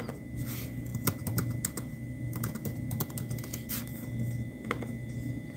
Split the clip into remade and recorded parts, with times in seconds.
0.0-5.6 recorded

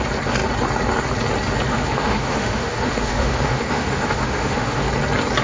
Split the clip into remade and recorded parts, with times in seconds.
0.0-1.7 recorded; 1.7-4.9 remade; 4.9-5.4 recorded

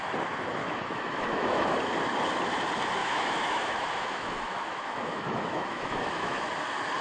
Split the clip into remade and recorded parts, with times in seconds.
0.0-0.6 recorded; 0.6-1.8 remade; 1.8-3.0 recorded; 3.0-6.5 remade; 6.5-7.0 recorded